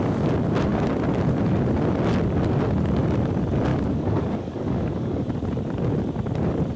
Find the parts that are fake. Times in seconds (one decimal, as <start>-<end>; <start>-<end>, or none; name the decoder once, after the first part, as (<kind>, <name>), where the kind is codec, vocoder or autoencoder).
3.7-5.4 (codec, DAC)